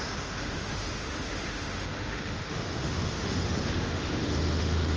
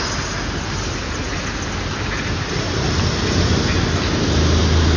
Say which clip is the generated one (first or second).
first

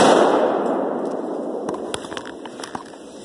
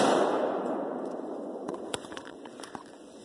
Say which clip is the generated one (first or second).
second